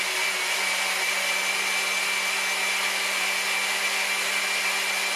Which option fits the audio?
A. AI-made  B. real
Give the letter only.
B